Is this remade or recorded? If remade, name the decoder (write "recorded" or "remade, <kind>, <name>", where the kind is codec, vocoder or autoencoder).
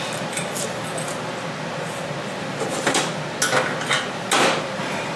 recorded